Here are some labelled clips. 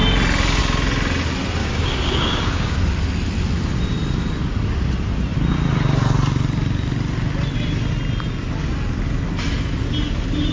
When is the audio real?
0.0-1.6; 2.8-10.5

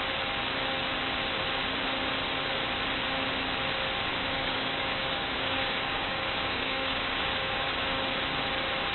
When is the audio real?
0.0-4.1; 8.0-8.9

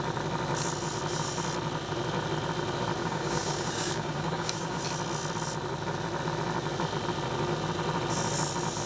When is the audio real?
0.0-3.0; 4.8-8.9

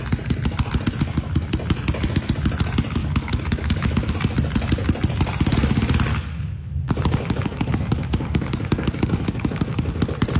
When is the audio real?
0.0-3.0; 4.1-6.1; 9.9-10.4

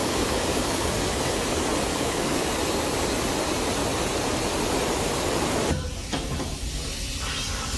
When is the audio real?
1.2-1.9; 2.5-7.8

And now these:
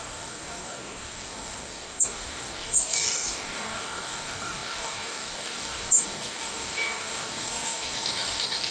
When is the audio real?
none